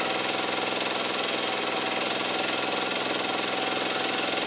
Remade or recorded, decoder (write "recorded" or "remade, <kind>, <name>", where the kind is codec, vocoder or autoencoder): recorded